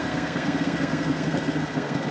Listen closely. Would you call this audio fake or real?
fake